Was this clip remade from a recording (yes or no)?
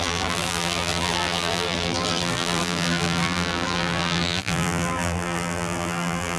yes